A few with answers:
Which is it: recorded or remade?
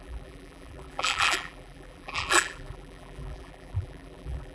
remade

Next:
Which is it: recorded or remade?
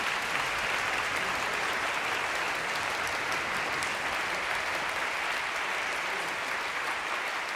recorded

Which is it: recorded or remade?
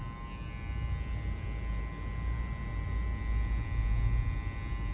recorded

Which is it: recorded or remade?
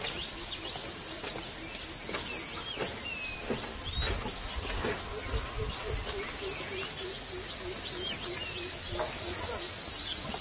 recorded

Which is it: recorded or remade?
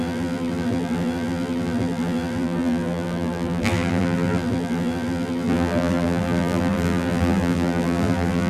remade